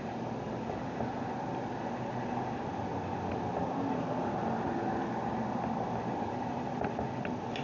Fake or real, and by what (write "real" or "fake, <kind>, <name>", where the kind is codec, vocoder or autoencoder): real